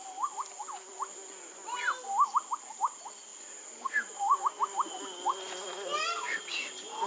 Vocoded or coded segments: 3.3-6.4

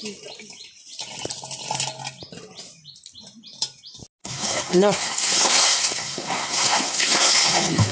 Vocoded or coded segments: 4.2-7.9

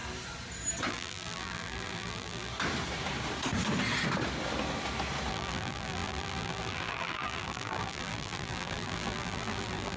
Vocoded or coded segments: 0.9-2.5; 5.3-10.0